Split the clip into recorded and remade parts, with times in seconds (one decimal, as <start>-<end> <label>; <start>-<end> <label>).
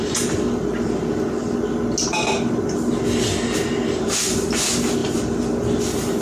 0.0-6.2 recorded